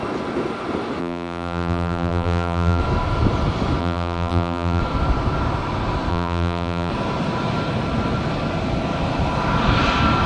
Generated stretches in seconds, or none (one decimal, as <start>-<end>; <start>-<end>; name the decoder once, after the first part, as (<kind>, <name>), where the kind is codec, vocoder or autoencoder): 1.0-2.8 (vocoder, BigVGAN v2); 3.8-4.8; 6.1-6.9